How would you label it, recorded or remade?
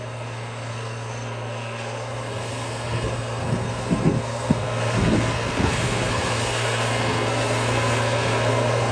remade